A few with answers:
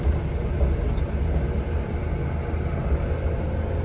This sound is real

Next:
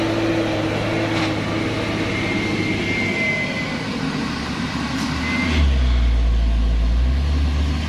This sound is real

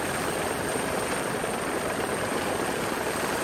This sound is real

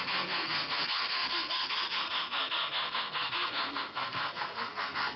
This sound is fake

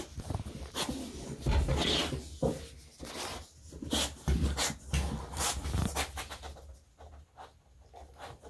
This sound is real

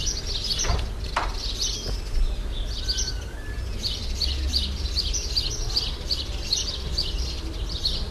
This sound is real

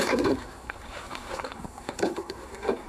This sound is fake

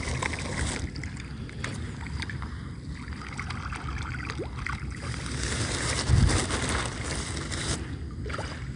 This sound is real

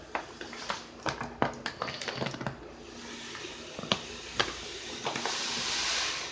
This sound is real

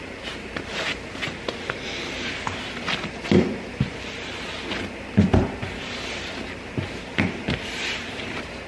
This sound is real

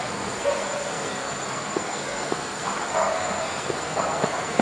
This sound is fake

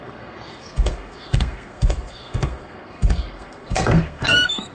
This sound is fake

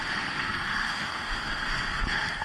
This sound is fake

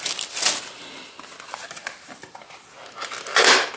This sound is real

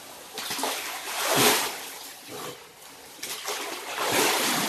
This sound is real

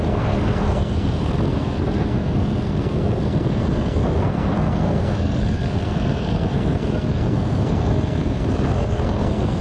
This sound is fake